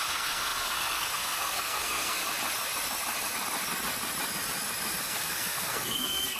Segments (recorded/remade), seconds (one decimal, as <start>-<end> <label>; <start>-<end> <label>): 0.0-2.2 remade; 2.2-5.0 recorded; 5.0-6.4 remade